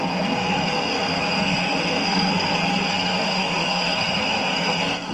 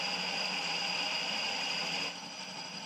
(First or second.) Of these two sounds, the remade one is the first